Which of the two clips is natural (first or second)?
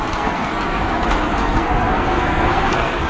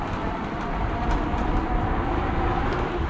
second